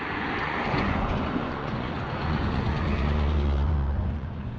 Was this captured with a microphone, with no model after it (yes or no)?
no